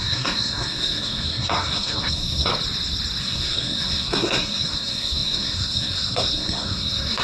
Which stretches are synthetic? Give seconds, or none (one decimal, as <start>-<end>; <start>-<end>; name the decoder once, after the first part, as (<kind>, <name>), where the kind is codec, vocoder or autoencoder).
0.0-2.5 (codec, SNAC); 3.2-7.2